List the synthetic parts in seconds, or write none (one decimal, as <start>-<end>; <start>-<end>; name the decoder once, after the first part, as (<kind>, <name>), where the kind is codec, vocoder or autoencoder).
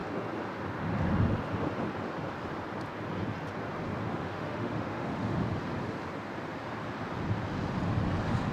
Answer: 4.1-5.5 (autoencoder, DAC-VAE)